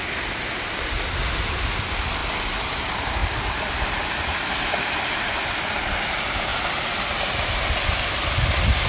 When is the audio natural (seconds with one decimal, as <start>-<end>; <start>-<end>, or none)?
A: 0.0-8.9